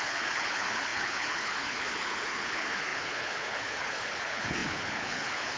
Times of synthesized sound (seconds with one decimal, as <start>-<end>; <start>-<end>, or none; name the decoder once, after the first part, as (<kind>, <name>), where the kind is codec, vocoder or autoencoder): 0.0-5.6 (codec, HILCodec)